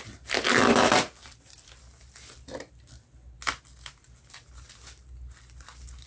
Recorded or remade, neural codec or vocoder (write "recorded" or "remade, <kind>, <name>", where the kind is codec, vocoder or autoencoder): recorded